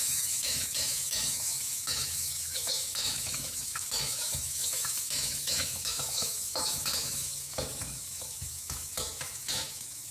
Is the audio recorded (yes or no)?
no